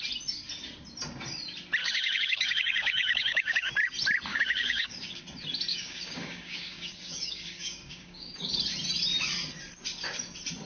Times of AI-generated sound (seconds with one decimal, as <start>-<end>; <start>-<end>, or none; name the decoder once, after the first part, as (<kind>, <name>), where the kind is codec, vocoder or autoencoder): 1.8-3.7 (codec, DAC); 4.3-5.2; 5.7-8.5